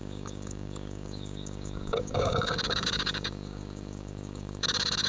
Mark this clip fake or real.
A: fake